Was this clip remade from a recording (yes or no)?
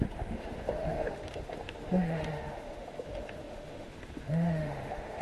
yes